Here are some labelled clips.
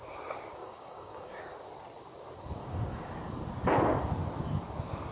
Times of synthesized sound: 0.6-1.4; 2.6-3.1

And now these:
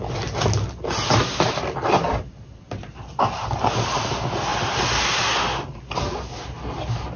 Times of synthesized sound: none

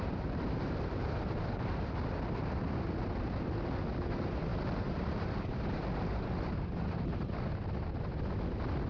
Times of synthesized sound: 0.0-0.9; 4.5-6.2

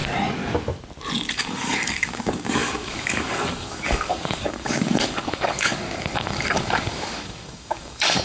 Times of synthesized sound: 1.3-8.2

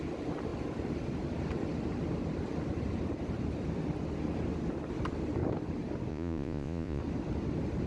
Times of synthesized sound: 6.1-7.0

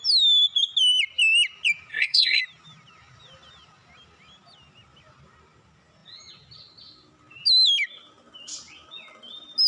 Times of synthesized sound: 1.9-2.4